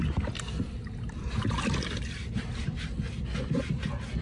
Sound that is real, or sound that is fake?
real